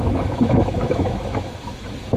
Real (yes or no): no